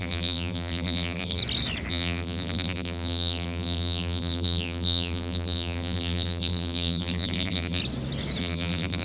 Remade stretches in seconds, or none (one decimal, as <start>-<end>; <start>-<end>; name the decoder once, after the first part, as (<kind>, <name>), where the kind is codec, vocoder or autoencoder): 0.0-1.4 (vocoder, BigVGAN v2); 1.9-7.8; 8.4-9.0